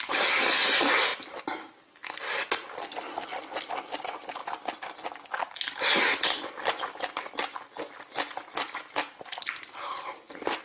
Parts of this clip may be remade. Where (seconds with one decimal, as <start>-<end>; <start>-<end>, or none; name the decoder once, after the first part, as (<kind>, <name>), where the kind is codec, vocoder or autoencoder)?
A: none